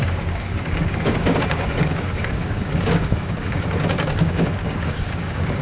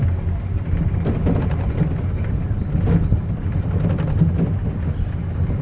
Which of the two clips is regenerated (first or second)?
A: first